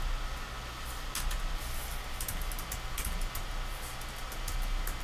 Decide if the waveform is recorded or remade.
recorded